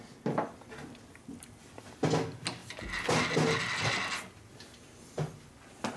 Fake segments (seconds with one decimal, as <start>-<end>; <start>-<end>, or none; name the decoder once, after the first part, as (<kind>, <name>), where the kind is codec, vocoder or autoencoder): none